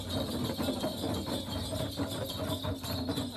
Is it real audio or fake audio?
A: real